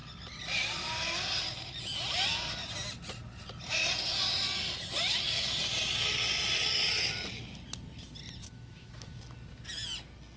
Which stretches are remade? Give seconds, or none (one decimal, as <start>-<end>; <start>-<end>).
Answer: 8.4-9.2